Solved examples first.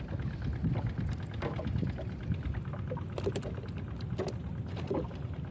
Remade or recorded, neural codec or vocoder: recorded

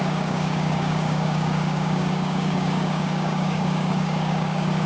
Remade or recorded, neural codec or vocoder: remade, codec, DAC